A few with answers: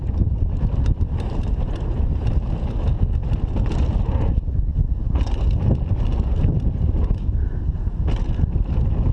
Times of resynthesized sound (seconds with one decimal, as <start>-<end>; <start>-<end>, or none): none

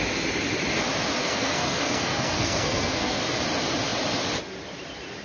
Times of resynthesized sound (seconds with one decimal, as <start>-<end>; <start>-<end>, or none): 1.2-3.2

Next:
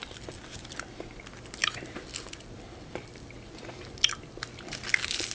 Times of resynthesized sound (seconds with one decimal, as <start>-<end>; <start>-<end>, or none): 0.0-1.0; 1.6-4.3

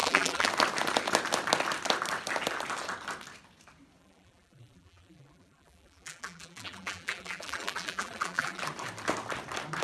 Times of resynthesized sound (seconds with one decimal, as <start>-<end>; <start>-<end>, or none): 0.0-0.5; 4.0-8.6